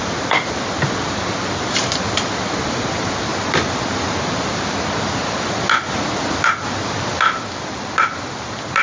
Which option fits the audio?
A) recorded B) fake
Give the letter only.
A